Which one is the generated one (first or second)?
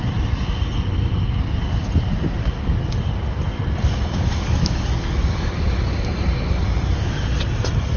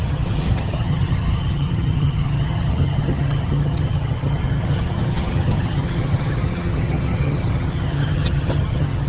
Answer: second